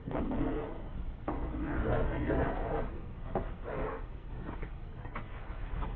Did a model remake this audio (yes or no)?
yes